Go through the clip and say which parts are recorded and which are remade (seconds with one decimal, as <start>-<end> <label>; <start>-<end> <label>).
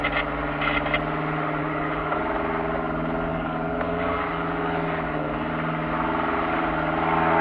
0.0-1.6 recorded; 1.6-2.2 remade; 2.2-3.3 recorded; 3.3-5.5 remade; 5.5-7.4 recorded